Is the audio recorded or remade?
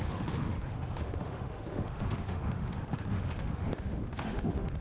remade